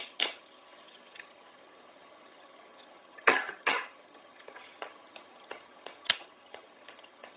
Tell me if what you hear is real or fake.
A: fake